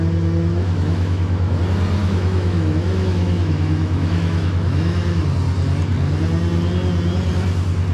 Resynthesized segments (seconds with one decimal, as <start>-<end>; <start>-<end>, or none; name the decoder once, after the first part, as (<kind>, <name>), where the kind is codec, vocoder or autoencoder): 0.5-1.6 (autoencoder, DAC-VAE); 2.0-5.2